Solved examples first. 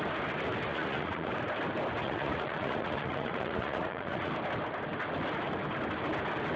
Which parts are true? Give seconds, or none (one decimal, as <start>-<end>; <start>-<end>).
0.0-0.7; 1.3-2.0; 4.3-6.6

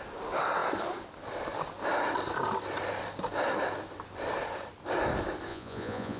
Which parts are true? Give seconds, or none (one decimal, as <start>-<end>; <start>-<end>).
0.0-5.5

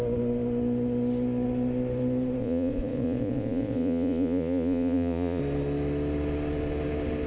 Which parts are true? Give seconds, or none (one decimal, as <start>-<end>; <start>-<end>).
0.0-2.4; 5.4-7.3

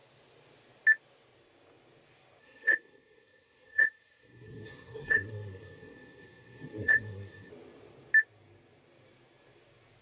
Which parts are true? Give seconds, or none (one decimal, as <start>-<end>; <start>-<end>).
0.0-2.4; 7.5-10.0

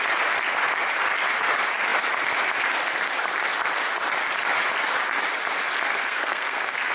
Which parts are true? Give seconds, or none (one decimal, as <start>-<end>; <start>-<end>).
0.0-5.9

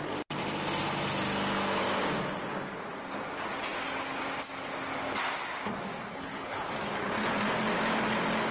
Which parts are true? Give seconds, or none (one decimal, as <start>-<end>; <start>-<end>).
0.0-6.1; 6.7-8.5

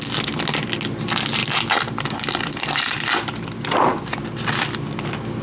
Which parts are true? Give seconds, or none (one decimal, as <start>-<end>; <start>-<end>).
0.0-5.4